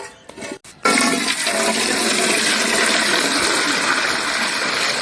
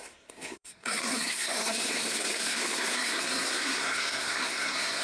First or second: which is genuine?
first